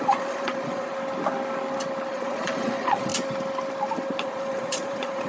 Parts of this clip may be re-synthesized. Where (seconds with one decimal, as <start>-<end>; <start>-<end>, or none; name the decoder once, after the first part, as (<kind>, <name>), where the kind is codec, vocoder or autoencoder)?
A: 0.0-0.9 (vocoder, Vocos); 2.1-3.1; 4.2-5.3